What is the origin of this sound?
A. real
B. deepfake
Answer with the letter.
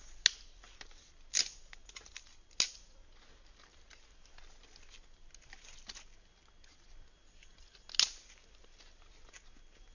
A